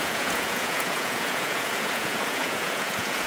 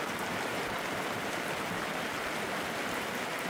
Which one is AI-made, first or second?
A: first